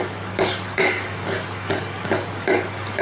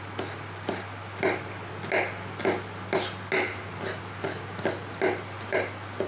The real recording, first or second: second